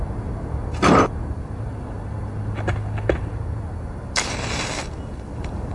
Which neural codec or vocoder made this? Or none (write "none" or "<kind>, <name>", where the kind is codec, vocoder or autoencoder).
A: none